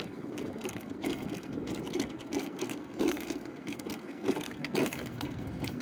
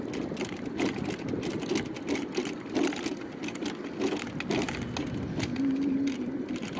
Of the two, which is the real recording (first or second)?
second